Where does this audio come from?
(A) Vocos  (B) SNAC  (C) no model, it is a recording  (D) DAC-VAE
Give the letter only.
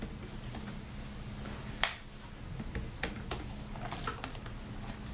C